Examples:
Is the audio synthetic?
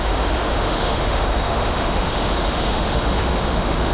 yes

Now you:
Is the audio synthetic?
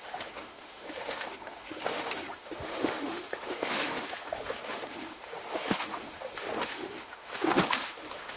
yes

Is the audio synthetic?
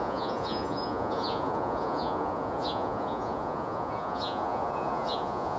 yes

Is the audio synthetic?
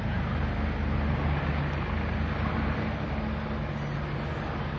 no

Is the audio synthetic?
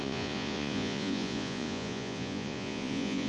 yes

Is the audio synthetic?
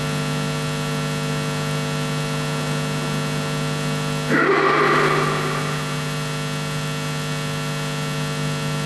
no